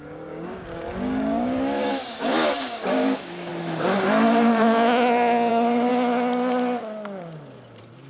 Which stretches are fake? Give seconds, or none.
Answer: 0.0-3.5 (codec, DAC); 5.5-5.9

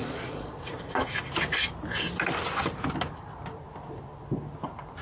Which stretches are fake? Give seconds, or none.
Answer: 0.0-0.6 (vocoder, Vocos)

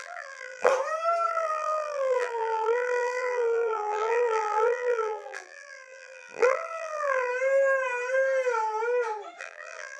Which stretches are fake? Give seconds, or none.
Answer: 0.0-0.7 (vocoder, BigVGAN v2); 1.3-7.3; 9.4-10.0

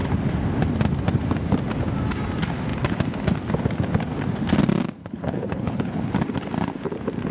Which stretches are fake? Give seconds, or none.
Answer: 5.0-6.0 (codec, HILCodec)